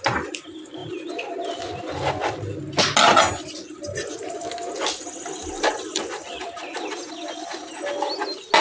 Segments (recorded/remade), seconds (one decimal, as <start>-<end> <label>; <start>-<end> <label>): 0.0-0.8 recorded; 0.8-1.6 remade; 1.6-8.6 recorded